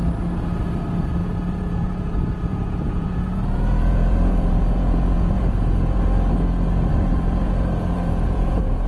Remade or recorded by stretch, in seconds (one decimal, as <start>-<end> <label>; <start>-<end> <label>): 0.0-1.2 recorded; 1.2-6.0 remade; 6.0-6.9 recorded; 6.9-8.9 remade